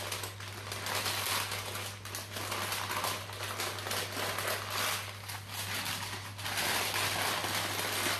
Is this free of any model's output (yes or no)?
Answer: yes